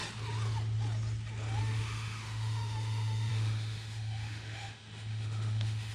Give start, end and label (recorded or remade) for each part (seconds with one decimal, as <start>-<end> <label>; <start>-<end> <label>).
0.0-1.6 recorded; 1.6-5.9 remade